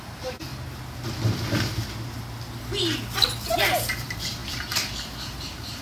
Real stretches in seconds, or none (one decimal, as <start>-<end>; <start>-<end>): 0.5-4.0